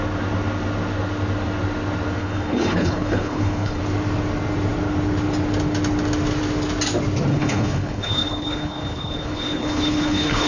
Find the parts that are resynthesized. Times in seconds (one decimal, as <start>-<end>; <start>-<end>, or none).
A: 2.2-3.8; 7.3-10.5